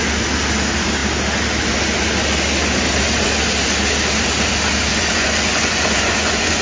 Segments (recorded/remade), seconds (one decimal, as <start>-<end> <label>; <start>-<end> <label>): 0.0-4.9 recorded; 4.9-6.6 remade